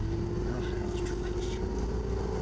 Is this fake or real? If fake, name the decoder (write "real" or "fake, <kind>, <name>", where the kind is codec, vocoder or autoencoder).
real